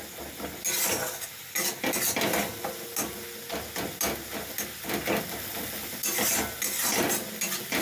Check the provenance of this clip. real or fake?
real